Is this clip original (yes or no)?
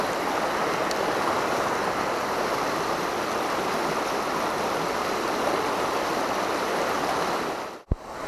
yes